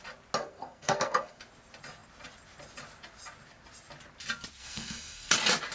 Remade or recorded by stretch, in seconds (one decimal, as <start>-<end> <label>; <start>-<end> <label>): 0.0-0.4 recorded; 0.4-1.4 remade; 1.4-4.6 recorded; 4.6-5.3 remade; 5.3-5.7 recorded